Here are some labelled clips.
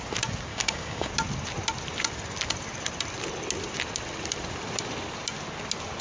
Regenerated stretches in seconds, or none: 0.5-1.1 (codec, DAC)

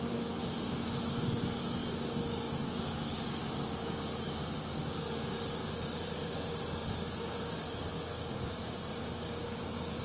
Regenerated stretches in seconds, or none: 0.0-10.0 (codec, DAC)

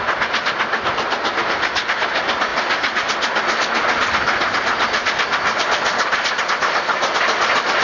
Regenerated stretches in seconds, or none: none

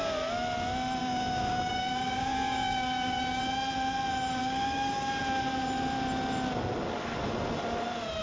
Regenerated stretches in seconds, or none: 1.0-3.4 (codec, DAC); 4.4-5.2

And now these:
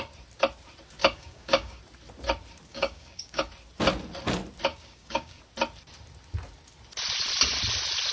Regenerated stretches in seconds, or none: 1.0-1.8 (codec, DAC); 2.7-3.5; 4.7-5.4